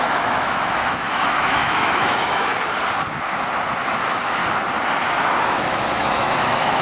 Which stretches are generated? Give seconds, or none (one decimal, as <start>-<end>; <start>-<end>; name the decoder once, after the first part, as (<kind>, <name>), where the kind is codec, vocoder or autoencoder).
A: 0.0-2.5 (autoencoder, DAC-VAE); 3.9-4.4; 5.6-6.8